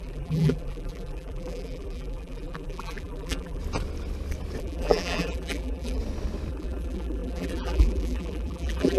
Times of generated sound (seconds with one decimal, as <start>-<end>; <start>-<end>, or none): 0.0-3.6; 4.6-6.0; 6.5-9.0